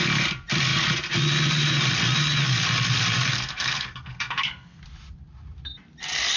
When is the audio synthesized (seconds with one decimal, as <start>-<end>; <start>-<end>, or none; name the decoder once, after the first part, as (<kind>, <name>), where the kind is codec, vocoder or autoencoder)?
3.3-4.8 (codec, SNAC)

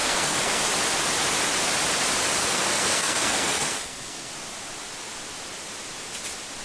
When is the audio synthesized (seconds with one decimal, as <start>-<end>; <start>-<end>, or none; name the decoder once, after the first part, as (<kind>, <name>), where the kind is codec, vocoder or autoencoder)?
0.0-0.6 (codec, SNAC); 2.4-4.3

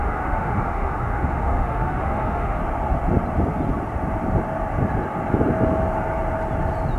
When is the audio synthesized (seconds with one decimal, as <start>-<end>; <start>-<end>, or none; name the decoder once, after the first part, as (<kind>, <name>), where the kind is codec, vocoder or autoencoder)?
0.0-2.6 (autoencoder, DAC-VAE)

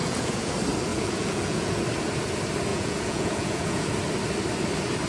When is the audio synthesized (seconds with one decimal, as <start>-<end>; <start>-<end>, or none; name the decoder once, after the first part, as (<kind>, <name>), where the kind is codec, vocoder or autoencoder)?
0.0-0.5 (vocoder, Vocos); 0.9-1.8; 2.7-3.9

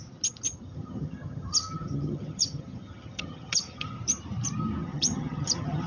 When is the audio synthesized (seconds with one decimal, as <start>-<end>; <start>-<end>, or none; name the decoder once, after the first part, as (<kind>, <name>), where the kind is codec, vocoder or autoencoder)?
0.5-4.0 (vocoder, HiFi-GAN); 4.8-5.9

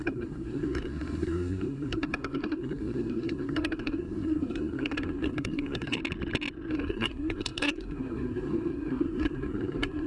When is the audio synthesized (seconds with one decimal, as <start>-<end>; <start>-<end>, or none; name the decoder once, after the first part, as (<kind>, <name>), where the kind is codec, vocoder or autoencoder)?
0.0-6.0 (codec, SNAC); 6.7-10.1